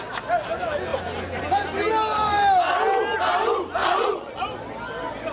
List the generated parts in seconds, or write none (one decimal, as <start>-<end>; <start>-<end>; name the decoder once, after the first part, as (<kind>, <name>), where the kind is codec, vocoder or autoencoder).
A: 3.8-4.4 (vocoder, Vocos)